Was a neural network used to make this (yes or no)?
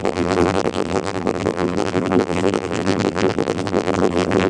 yes